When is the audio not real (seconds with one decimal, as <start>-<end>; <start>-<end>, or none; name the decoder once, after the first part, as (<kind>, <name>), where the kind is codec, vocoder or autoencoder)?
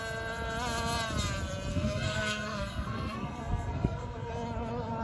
1.7-4.3 (codec, SNAC)